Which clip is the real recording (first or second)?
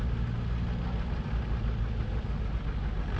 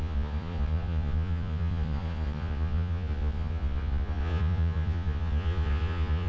first